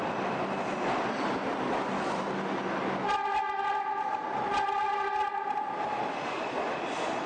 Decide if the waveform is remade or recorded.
recorded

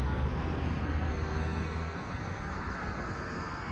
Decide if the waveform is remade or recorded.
remade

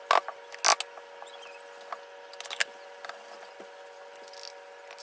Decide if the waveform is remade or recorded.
recorded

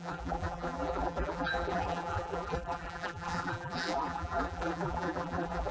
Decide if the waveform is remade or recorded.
remade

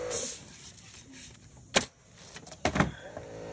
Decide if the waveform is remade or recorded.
recorded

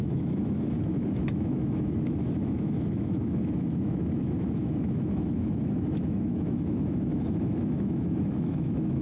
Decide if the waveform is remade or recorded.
remade